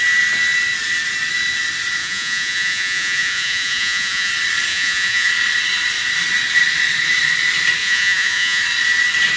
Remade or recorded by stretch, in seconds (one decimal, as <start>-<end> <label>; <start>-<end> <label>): 0.0-2.0 recorded; 2.0-4.3 remade; 4.3-4.7 recorded; 4.7-5.3 remade; 5.3-7.8 recorded; 7.8-8.6 remade; 8.6-9.4 recorded